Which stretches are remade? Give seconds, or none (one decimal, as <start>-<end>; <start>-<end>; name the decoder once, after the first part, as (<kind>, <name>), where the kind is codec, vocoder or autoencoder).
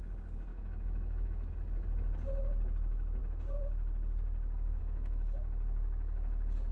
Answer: 0.5-1.5 (autoencoder, DAC-VAE)